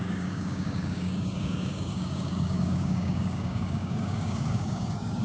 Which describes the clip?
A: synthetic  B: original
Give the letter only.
A